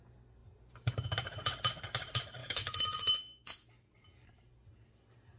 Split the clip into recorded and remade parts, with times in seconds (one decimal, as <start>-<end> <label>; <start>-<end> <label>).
0.0-2.4 recorded; 2.4-3.7 remade; 3.7-5.4 recorded